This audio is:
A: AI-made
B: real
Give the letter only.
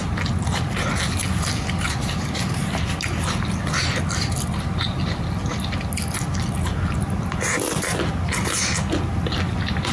B